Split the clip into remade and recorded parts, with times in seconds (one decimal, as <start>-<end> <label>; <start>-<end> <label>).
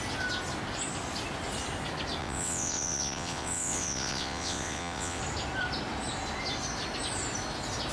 0.0-2.2 recorded; 2.2-5.2 remade; 5.2-7.9 recorded